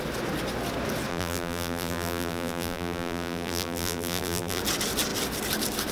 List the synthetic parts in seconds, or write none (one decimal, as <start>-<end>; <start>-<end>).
1.1-4.6